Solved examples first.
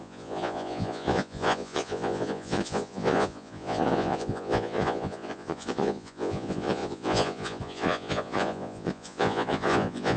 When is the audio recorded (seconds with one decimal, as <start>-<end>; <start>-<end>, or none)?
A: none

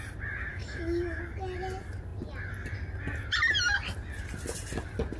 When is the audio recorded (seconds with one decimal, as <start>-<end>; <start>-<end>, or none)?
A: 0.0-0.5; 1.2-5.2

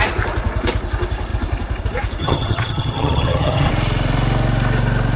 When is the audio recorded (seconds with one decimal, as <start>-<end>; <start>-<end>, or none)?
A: 0.0-2.2; 3.7-5.2

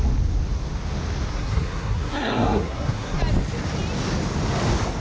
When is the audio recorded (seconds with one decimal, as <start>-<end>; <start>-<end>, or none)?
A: 0.0-1.3; 3.2-5.0

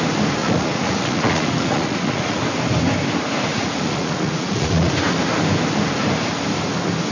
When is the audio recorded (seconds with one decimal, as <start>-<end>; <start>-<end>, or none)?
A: 0.0-0.4; 2.4-3.5; 4.9-7.1

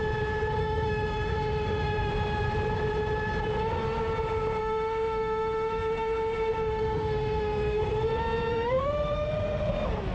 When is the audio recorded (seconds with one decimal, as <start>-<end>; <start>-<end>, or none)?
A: 0.0-0.6; 2.1-4.6; 7.8-8.5; 9.7-10.1